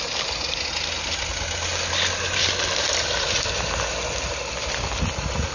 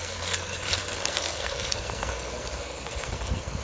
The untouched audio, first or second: first